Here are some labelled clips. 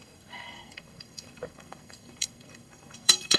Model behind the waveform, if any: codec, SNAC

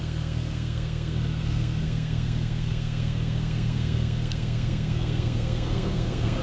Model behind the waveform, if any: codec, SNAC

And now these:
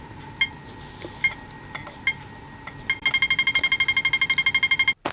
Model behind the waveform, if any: none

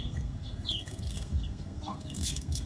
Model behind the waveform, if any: codec, SNAC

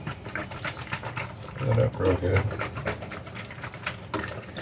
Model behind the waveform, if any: none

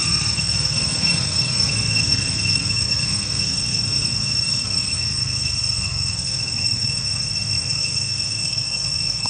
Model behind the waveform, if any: codec, SNAC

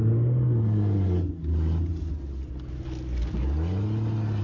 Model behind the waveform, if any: none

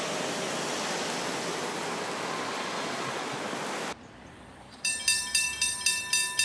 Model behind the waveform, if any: none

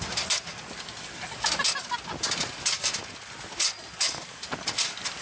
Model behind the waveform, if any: none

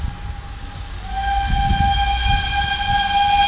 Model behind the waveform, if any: none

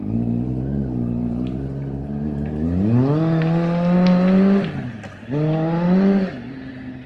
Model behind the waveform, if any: none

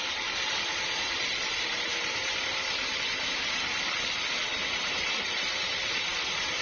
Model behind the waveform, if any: none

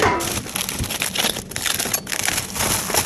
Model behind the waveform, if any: none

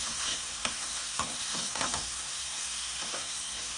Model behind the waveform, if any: codec, SNAC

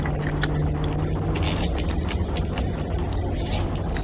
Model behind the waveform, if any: none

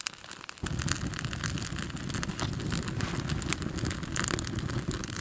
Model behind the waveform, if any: none